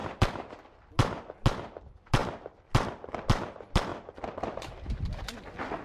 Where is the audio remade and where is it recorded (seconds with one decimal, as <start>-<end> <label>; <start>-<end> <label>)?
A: 0.0-5.8 recorded